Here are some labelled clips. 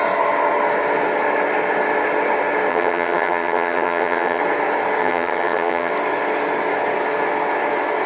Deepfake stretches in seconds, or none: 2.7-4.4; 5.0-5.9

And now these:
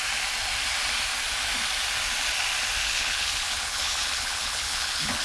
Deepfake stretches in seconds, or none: 2.8-5.2